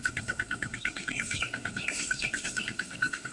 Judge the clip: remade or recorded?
remade